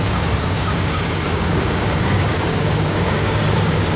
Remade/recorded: remade